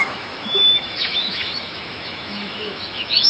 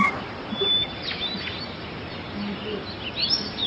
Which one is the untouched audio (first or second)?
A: second